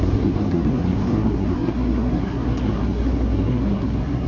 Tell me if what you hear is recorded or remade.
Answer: remade